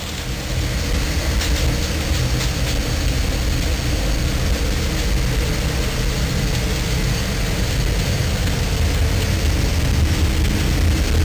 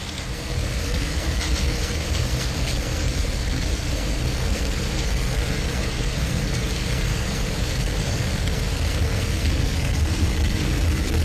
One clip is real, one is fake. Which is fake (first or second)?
second